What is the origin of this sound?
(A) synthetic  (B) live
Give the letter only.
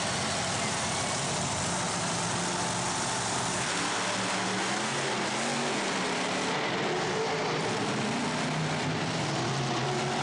B